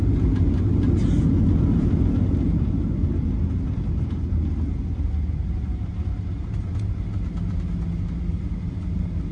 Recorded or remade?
recorded